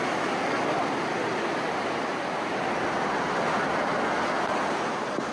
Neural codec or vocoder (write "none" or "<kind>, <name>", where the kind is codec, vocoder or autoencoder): none